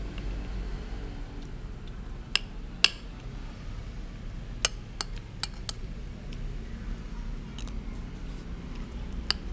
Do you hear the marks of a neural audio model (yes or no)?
no